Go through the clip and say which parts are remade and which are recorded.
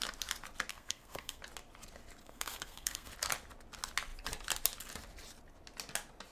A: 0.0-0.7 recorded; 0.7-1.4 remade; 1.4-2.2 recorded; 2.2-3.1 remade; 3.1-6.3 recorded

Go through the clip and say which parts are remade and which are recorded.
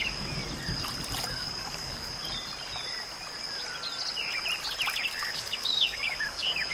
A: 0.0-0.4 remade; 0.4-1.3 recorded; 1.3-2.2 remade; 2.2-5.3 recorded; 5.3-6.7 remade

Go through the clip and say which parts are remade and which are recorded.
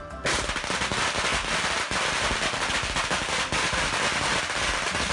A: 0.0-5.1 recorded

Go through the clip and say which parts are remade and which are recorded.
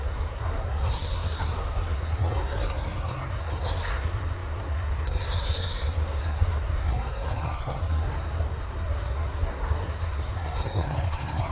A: 0.0-11.5 remade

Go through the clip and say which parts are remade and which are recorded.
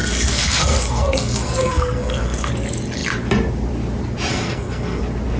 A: 0.0-2.5 remade; 2.5-4.3 recorded; 4.3-5.0 remade; 5.0-5.4 recorded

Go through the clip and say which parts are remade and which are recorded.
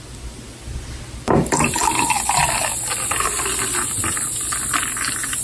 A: 0.0-5.4 recorded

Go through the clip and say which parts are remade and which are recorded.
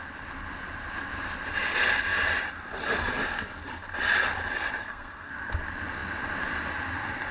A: 0.0-4.8 recorded; 4.8-5.3 remade; 5.3-7.3 recorded